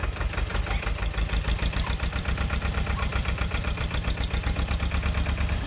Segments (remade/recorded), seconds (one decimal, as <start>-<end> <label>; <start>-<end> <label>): 0.0-0.5 recorded; 0.5-2.6 remade; 2.6-3.1 recorded; 3.1-4.1 remade; 4.1-5.7 recorded